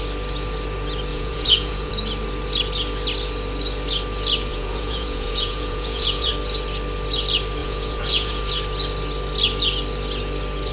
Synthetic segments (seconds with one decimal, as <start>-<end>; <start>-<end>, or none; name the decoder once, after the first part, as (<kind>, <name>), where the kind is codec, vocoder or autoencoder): 1.1-1.9 (vocoder, Vocos); 4.5-6.3; 7.6-8.4